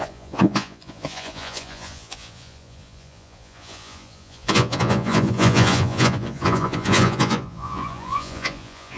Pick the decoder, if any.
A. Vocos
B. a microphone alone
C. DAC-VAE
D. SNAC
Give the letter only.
A